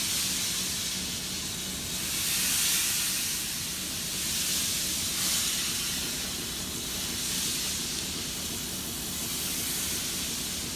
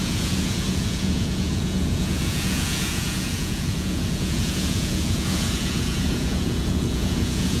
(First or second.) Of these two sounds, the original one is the first